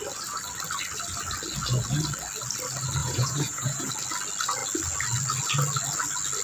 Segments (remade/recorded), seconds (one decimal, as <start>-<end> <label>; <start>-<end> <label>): 0.0-3.0 recorded; 3.0-3.9 remade; 3.9-6.4 recorded